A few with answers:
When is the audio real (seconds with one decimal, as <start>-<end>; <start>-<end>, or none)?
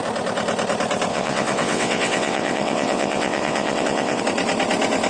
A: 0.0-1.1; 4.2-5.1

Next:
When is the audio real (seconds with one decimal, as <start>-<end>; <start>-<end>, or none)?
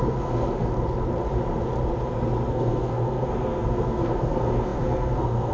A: 0.7-2.5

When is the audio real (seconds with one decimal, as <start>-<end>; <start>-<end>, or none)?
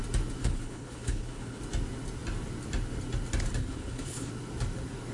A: 0.0-0.4; 1.6-3.6; 4.3-5.1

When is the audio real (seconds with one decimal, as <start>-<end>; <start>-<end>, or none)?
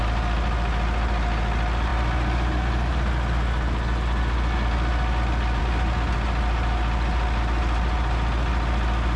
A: 0.0-9.2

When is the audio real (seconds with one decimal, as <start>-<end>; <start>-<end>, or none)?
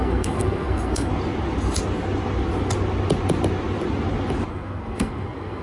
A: 1.1-4.5